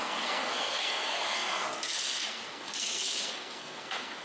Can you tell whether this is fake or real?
fake